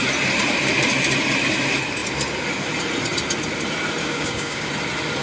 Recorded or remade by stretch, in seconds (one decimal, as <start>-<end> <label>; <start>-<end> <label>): 0.0-4.0 recorded; 4.0-4.7 remade; 4.7-5.2 recorded